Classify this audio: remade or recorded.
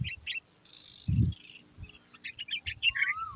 recorded